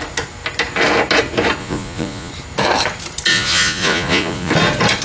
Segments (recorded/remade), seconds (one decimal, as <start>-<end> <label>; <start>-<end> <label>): 0.0-1.6 recorded; 1.6-2.3 remade; 2.3-3.3 recorded; 3.3-4.5 remade; 4.5-5.0 recorded